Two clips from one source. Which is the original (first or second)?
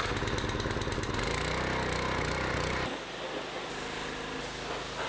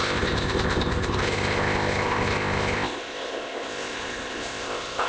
first